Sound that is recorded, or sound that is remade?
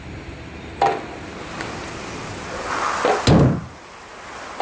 recorded